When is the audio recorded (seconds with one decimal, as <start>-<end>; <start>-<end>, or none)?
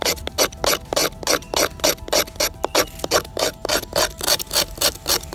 0.0-5.3